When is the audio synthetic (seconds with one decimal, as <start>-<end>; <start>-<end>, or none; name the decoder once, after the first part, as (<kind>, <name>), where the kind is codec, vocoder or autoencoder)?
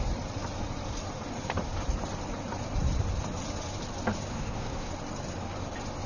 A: 4.3-4.9 (codec, SNAC)